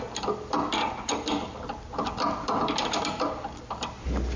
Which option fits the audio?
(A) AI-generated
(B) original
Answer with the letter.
A